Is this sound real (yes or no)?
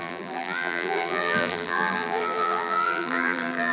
no